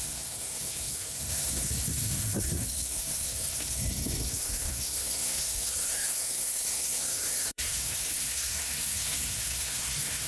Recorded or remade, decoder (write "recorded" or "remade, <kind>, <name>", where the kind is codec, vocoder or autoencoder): remade, codec, SNAC